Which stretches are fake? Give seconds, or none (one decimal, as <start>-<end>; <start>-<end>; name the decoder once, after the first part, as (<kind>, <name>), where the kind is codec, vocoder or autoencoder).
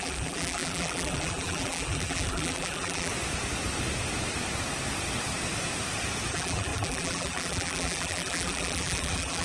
0.0-3.1 (vocoder, BigVGAN v2); 6.3-9.4